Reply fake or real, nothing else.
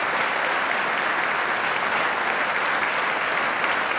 real